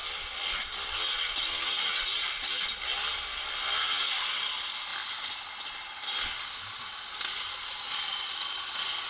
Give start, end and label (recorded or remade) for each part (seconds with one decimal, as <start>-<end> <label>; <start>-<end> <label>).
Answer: 0.0-9.1 recorded